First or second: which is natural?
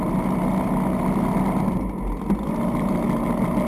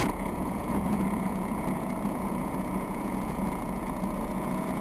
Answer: first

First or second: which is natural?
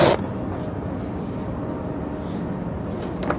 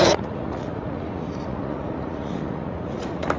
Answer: first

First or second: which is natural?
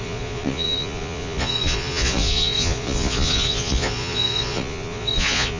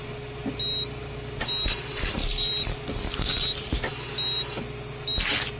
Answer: second